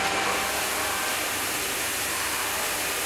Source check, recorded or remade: recorded